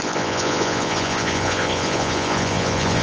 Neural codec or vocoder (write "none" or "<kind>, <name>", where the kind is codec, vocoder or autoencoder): vocoder, Vocos